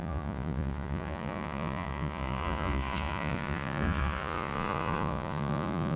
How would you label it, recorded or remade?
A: remade